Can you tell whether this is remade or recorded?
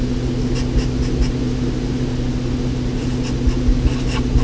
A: recorded